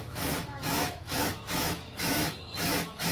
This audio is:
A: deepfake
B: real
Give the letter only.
A